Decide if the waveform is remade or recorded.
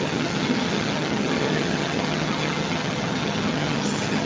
remade